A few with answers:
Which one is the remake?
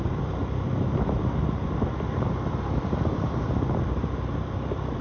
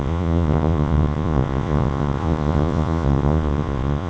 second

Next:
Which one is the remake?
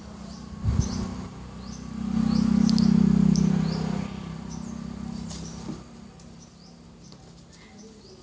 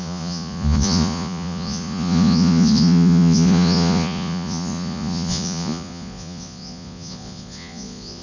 second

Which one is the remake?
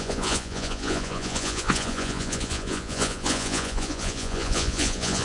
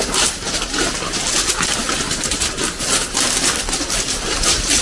first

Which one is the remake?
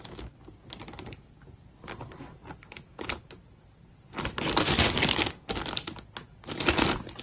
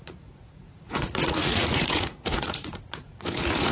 second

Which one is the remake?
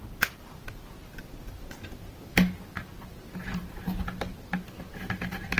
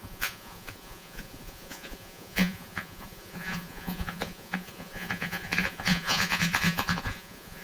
second